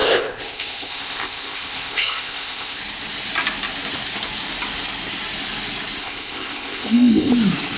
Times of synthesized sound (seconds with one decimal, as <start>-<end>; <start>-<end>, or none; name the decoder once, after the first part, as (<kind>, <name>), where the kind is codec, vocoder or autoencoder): 0.0-2.8 (codec, ZipCodec); 6.0-7.3